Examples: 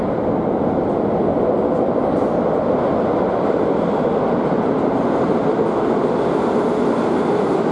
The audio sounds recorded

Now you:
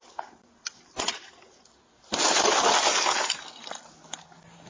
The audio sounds recorded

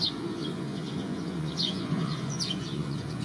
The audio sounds remade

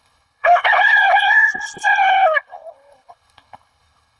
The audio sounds remade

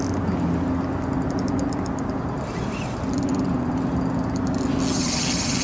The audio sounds recorded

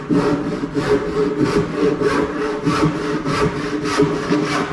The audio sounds recorded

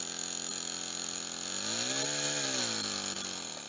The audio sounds recorded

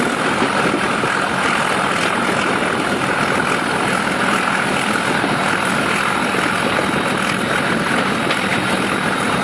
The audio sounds recorded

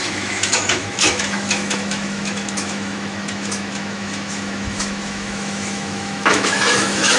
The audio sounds remade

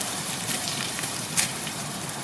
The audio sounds remade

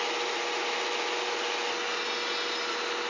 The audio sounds recorded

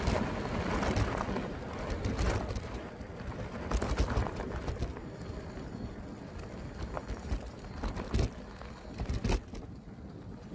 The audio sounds recorded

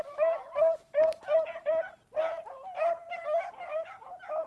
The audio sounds recorded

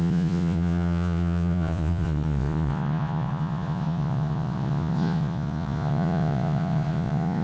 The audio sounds remade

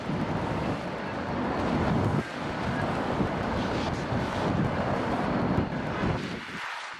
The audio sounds recorded